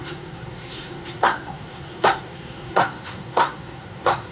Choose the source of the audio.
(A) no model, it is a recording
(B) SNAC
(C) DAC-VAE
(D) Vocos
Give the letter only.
B